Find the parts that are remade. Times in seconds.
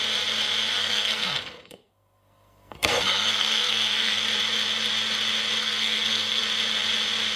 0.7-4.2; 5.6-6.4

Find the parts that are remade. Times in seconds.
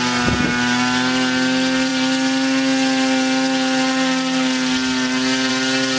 none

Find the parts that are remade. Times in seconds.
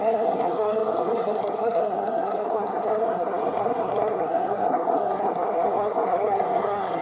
0.0-7.0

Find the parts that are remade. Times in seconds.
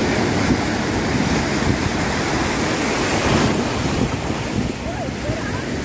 none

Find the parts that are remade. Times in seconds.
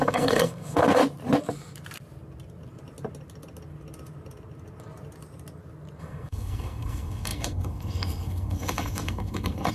0.0-1.0; 6.0-9.7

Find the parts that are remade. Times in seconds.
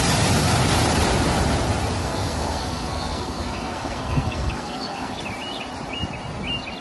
2.0-5.2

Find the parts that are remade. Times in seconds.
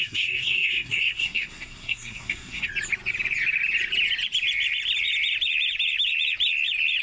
0.0-2.7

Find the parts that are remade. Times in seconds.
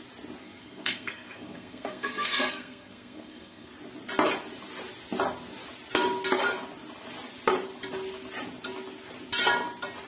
0.4-3.7